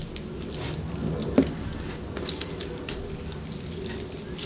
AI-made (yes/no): no